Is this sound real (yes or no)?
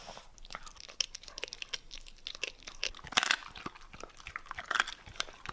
yes